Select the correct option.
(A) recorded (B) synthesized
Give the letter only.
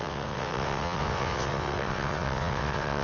B